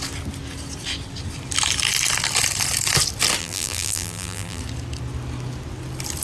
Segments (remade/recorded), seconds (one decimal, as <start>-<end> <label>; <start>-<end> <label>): 0.0-3.4 recorded; 3.4-4.6 remade; 4.6-6.2 recorded